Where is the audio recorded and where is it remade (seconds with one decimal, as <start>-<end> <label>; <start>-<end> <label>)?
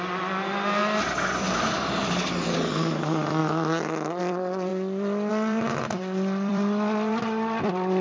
0.0-0.8 remade; 0.8-1.4 recorded; 1.4-3.4 remade; 3.4-4.2 recorded; 4.2-4.7 remade; 4.7-5.3 recorded; 5.3-8.0 remade